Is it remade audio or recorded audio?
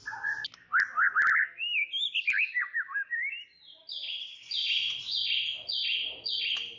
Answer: recorded